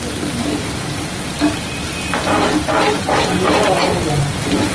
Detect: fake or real real